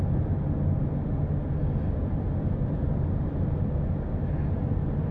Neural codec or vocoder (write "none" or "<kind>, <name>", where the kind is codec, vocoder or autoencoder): none